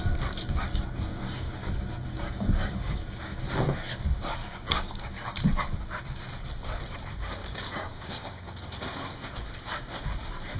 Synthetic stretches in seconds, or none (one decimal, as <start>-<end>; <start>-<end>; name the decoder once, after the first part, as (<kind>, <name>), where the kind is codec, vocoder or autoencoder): 1.1-3.4 (codec, DAC); 4.4-5.1; 7.4-8.4